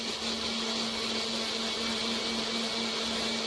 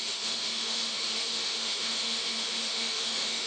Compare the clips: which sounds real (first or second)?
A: first